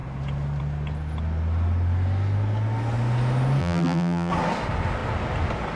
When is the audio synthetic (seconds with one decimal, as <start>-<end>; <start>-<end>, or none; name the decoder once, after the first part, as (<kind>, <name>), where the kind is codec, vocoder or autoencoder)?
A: 3.6-4.3 (vocoder, BigVGAN v2)